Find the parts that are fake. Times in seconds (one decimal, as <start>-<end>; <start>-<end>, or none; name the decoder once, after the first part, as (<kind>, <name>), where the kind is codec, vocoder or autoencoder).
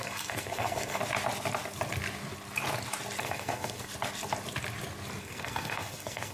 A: 0.0-1.0 (codec, SNAC); 3.2-3.9; 5.2-6.3